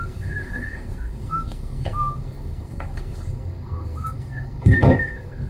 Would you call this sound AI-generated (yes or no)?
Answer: yes